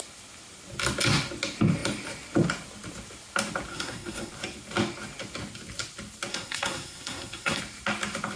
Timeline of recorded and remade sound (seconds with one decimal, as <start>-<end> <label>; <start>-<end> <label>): 0.0-3.7 recorded; 3.7-4.3 remade; 4.3-6.3 recorded; 6.3-7.6 remade; 7.6-8.4 recorded